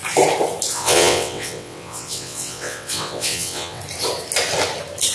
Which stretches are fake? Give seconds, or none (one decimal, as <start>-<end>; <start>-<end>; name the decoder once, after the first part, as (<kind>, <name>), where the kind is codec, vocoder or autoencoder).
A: 0.7-3.8 (vocoder, WaveNeXt)